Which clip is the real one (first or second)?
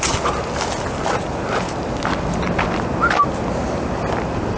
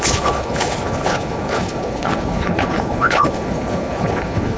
first